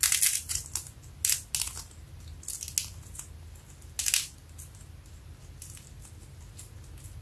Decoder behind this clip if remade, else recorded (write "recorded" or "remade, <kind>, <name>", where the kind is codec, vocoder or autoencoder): recorded